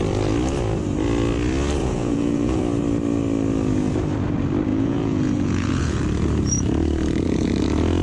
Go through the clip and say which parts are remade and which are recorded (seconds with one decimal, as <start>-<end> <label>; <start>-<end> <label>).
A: 0.0-1.8 recorded; 1.8-2.6 remade; 2.6-4.7 recorded; 4.7-6.0 remade; 6.0-8.0 recorded